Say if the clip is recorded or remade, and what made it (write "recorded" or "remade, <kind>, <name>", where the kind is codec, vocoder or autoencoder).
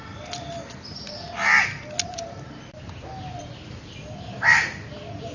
recorded